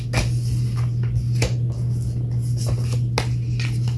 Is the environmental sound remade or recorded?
recorded